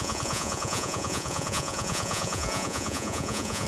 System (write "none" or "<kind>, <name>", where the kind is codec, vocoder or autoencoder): vocoder, Vocos